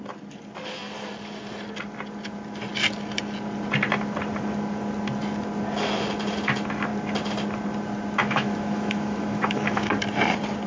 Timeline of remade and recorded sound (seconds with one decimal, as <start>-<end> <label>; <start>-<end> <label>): 0.0-8.2 recorded; 8.2-9.9 remade; 9.9-10.7 recorded